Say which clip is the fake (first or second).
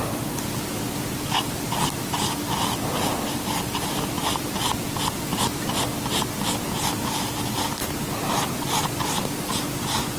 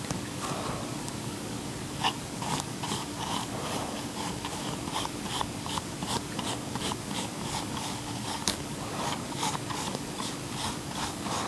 second